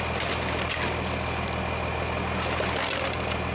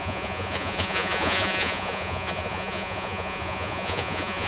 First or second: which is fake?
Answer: second